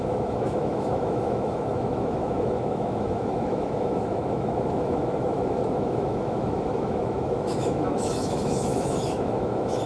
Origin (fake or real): fake